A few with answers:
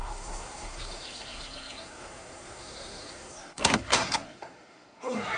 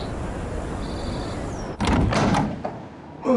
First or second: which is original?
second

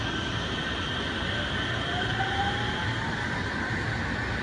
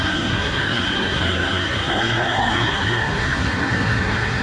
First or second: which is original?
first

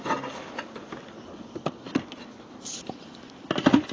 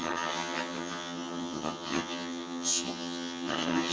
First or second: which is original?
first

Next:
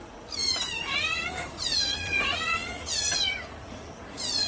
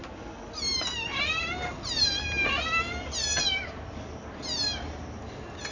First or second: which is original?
second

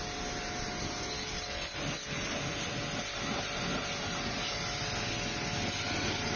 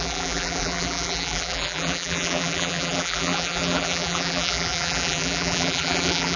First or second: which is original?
first